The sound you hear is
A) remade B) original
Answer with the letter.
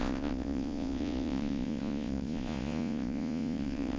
A